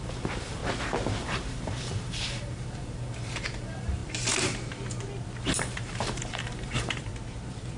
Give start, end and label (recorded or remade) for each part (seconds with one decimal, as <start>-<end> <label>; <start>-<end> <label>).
0.0-0.6 remade; 0.6-1.2 recorded; 1.2-4.0 remade; 4.0-5.4 recorded; 5.4-7.1 remade; 7.1-7.8 recorded